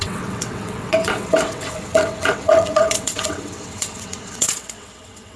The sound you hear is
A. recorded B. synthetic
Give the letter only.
B